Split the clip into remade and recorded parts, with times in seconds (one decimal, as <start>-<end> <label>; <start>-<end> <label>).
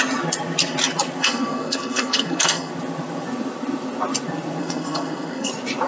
0.0-1.2 recorded; 1.2-2.7 remade; 2.7-4.6 recorded; 4.6-5.5 remade; 5.5-5.9 recorded